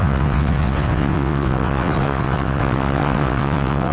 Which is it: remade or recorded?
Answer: remade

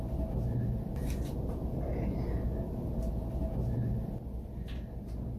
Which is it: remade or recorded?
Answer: recorded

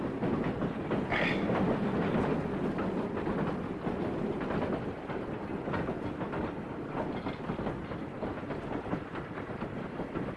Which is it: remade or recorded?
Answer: recorded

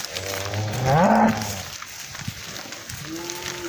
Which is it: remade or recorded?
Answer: recorded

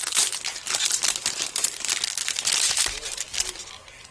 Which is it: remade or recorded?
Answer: recorded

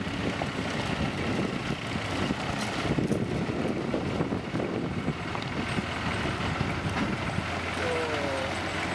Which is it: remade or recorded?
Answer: recorded